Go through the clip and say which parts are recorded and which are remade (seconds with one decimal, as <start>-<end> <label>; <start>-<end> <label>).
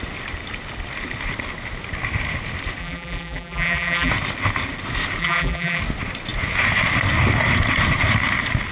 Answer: 0.0-2.8 recorded; 2.8-4.1 remade; 4.1-5.2 recorded; 5.2-5.8 remade; 5.8-8.7 recorded